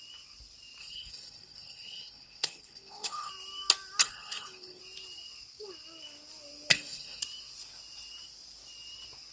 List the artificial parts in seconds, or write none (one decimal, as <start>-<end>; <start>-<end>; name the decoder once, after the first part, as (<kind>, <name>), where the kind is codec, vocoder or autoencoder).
0.8-3.3 (codec, HILCodec); 4.0-4.8; 6.7-7.2